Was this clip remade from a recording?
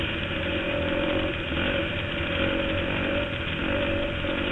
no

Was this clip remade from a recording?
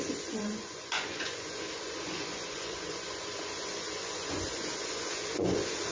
yes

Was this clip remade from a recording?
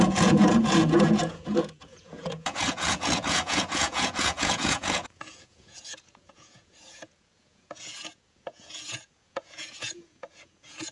yes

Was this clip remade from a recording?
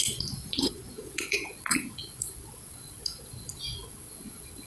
yes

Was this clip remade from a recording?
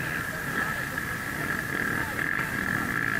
no